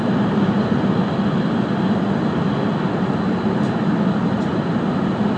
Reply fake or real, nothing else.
real